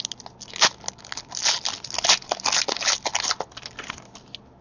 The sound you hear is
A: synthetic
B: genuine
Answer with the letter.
B